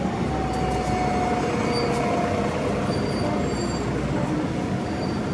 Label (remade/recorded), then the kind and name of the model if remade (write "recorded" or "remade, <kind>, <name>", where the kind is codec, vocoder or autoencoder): recorded